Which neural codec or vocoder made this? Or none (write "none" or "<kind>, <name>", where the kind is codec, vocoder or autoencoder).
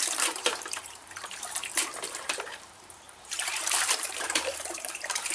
vocoder, BigVGAN v2